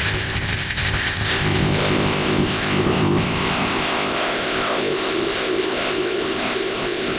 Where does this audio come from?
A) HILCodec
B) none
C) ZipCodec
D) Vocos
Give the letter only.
C